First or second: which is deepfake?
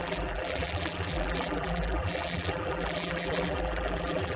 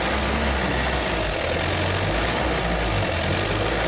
first